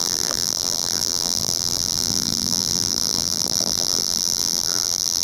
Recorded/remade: remade